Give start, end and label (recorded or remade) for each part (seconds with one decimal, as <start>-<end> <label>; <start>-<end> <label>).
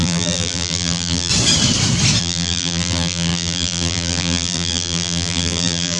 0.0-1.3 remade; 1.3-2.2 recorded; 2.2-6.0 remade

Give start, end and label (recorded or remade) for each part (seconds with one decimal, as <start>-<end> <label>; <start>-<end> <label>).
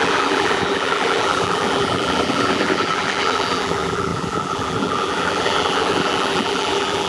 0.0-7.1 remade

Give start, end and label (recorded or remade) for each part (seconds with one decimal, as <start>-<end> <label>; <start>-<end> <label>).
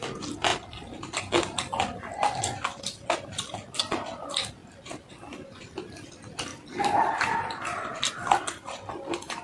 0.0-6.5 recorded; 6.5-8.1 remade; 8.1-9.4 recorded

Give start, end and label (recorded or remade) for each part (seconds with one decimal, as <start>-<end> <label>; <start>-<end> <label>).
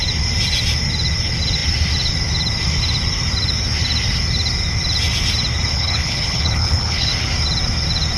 0.0-5.7 recorded; 5.7-7.1 remade; 7.1-8.2 recorded